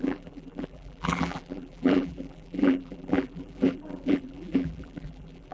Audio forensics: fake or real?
fake